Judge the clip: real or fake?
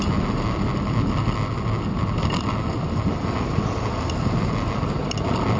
real